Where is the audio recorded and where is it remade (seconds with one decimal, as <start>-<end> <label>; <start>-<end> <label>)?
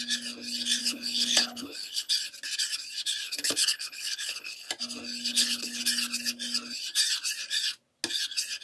0.0-0.8 recorded; 0.8-2.1 remade; 2.1-3.2 recorded; 3.2-4.7 remade; 4.7-5.3 recorded; 5.3-5.8 remade; 5.8-8.6 recorded